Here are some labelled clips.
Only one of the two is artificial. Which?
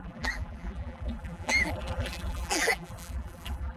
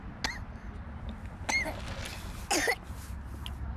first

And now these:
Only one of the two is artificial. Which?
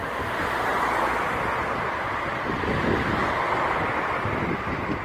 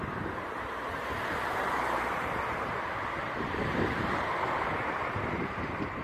second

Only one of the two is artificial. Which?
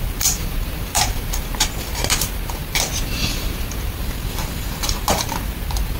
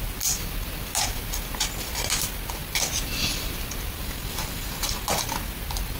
first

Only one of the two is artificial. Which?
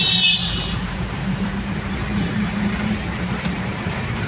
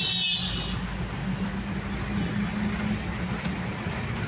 first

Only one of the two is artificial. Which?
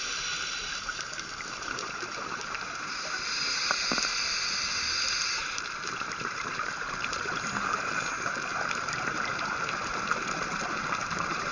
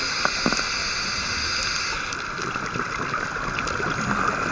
first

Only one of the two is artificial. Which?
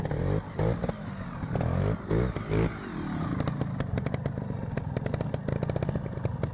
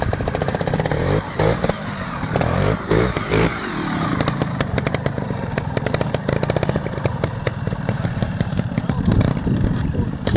second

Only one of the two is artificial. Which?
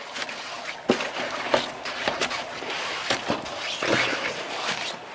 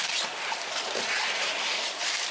second